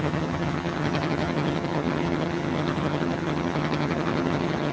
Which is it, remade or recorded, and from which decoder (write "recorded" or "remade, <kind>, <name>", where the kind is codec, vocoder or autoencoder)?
remade, vocoder, HiFi-GAN